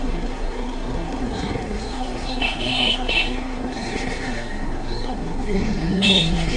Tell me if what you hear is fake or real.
fake